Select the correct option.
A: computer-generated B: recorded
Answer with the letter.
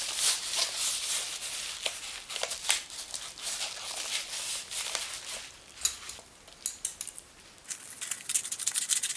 B